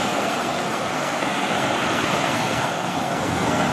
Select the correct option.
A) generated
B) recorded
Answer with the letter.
A